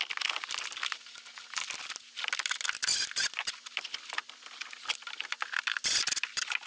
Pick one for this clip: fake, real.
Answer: real